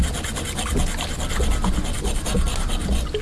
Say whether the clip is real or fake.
real